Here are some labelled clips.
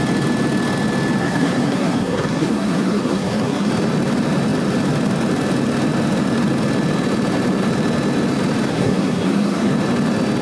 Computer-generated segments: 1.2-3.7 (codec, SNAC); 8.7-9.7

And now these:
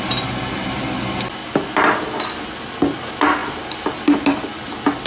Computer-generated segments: none

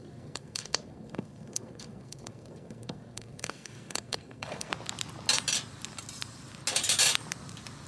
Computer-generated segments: 0.0-4.7 (codec, SNAC)

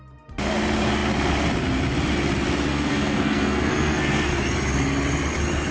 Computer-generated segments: 2.7-4.3 (codec, SNAC)